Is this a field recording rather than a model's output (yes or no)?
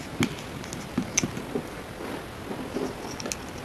yes